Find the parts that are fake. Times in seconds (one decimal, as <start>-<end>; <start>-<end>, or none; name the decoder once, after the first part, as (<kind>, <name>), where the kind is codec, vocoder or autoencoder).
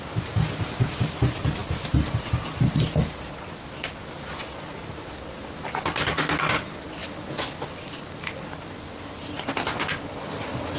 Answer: none